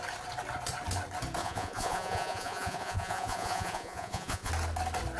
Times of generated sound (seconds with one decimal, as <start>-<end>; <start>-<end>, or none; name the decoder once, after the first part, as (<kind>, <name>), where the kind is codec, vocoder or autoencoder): 1.4-4.5 (vocoder, Vocos)